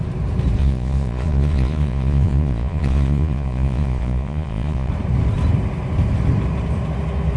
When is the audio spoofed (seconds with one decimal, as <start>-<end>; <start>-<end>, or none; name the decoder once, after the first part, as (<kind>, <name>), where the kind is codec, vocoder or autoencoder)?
0.6-4.9 (vocoder, Vocos)